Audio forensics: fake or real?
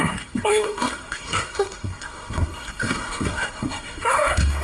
fake